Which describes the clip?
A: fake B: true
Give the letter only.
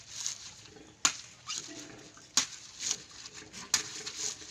B